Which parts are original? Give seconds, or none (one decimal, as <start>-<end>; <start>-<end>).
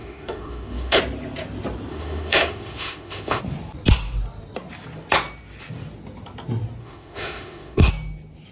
1.0-1.9; 3.4-6.8; 7.9-8.5